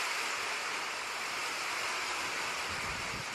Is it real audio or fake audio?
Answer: fake